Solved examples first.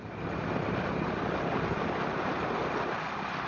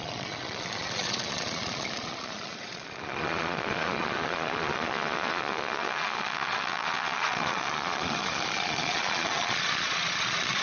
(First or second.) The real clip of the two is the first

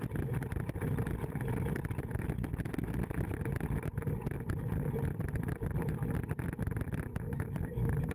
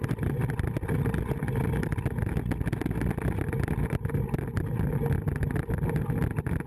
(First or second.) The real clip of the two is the second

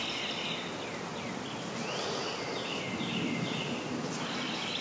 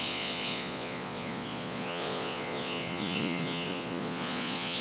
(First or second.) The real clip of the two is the first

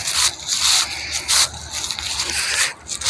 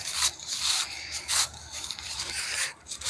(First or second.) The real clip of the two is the first